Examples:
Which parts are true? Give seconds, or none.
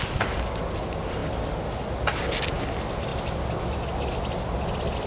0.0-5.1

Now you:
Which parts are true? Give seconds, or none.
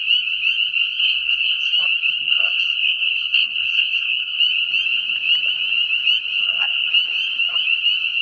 0.0-1.0; 1.7-2.2; 4.4-6.4; 6.9-8.2